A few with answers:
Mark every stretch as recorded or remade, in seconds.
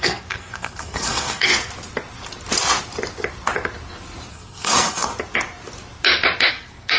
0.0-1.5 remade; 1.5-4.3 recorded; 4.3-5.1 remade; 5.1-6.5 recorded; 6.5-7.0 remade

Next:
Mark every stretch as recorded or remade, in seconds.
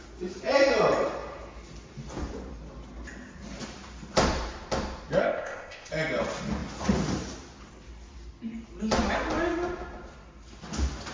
0.0-5.2 recorded; 5.2-5.9 remade; 5.9-11.1 recorded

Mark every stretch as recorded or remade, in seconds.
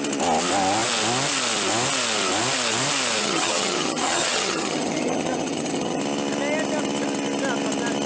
0.0-3.2 recorded; 3.2-6.0 remade; 6.0-8.1 recorded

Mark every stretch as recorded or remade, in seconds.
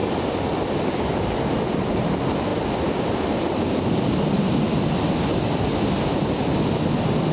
0.0-7.3 recorded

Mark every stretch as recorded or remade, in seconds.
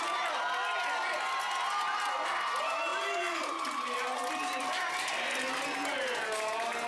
0.0-6.9 recorded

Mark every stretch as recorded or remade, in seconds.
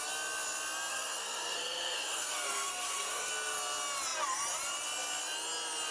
0.0-0.9 recorded; 0.9-3.3 remade; 3.3-5.9 recorded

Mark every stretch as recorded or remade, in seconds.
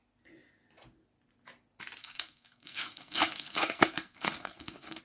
0.0-2.0 recorded; 2.0-5.0 remade